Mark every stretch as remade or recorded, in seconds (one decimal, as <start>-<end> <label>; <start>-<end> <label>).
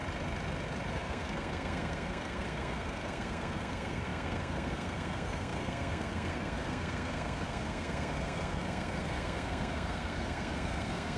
0.0-0.9 recorded; 0.9-11.2 remade